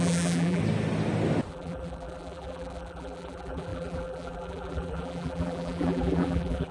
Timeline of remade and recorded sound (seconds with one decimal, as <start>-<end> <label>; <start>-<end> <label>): 0.0-0.6 remade; 0.6-1.5 recorded; 1.5-6.7 remade